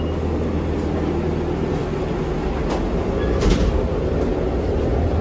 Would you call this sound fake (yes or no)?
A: no